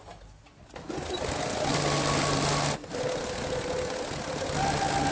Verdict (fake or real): real